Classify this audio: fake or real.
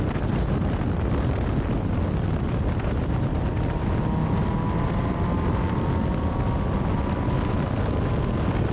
real